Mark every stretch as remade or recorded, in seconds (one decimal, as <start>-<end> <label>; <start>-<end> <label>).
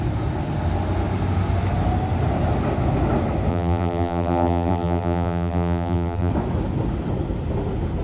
0.0-3.5 recorded; 3.5-6.3 remade; 6.3-8.0 recorded